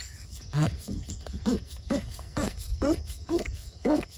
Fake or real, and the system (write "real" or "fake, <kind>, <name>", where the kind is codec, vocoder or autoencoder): fake, codec, SNAC